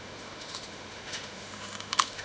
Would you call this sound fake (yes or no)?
yes